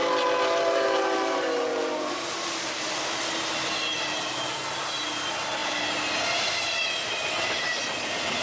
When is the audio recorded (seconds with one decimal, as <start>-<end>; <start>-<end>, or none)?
2.8-8.4